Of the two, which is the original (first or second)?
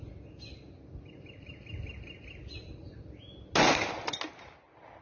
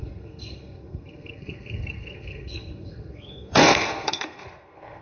first